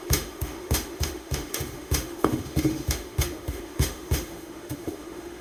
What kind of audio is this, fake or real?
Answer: fake